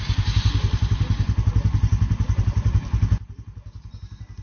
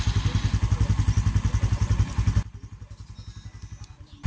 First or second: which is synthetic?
first